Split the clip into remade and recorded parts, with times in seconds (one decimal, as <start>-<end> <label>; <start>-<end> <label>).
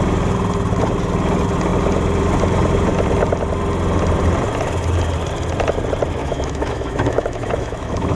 0.0-6.2 recorded; 6.2-8.2 remade